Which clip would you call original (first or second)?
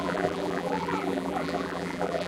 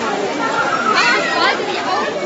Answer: second